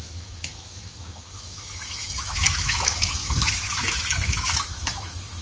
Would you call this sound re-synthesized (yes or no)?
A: yes